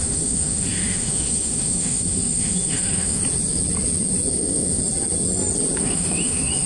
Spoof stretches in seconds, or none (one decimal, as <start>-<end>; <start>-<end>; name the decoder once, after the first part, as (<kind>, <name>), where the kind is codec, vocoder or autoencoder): 0.0-3.2 (autoencoder, DAC-VAE); 4.3-4.8; 5.8-6.7